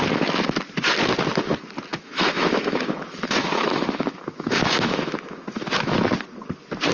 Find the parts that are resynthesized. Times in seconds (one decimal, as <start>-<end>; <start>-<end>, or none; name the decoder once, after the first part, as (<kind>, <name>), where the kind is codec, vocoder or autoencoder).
1.9-6.0 (autoencoder, DAC-VAE)